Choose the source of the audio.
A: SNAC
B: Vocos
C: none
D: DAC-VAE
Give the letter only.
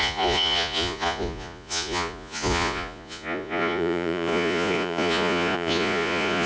B